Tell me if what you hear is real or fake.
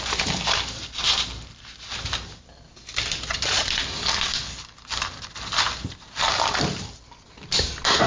real